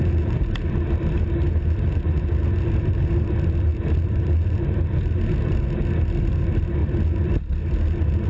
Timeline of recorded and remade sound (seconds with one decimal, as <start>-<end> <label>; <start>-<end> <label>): 0.0-8.3 recorded